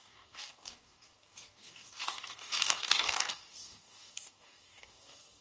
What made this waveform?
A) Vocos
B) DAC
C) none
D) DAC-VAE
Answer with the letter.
B